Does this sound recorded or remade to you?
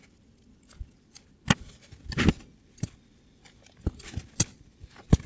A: recorded